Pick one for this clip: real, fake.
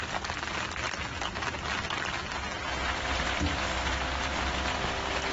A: real